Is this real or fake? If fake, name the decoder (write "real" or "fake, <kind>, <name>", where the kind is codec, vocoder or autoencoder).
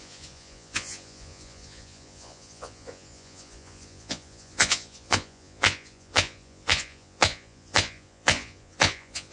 fake, vocoder, Vocos